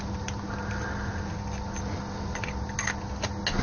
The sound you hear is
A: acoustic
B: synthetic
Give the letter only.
A